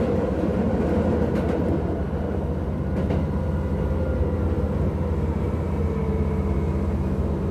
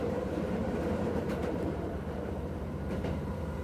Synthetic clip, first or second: second